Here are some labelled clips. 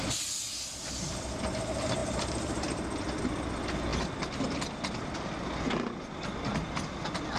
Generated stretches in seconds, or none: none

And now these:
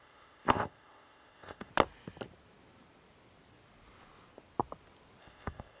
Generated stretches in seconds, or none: 0.0-1.7 (codec, ZipCodec); 5.2-5.8

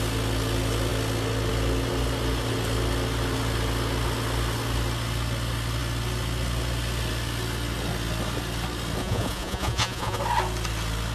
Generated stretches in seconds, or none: 9.0-10.2 (vocoder, Vocos)

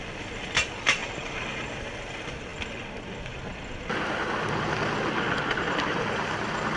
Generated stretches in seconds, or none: none